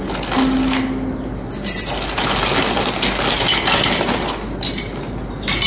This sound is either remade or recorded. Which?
recorded